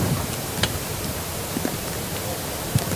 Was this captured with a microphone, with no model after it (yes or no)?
no